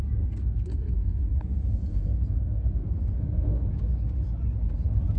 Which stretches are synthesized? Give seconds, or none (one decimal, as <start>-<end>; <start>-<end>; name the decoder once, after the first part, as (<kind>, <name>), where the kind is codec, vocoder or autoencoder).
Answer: 0.4-1.2 (codec, SNAC); 1.9-3.7